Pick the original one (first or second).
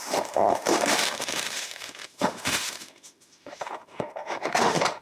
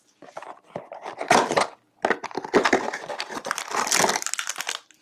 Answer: second